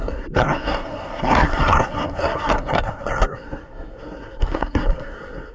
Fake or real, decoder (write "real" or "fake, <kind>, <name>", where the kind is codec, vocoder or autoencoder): fake, codec, SNAC